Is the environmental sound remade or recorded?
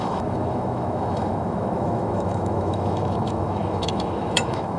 remade